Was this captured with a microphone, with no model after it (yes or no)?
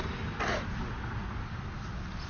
yes